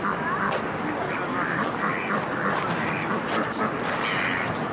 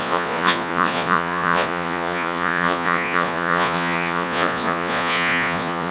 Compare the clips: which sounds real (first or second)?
first